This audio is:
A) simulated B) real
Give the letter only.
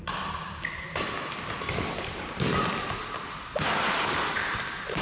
B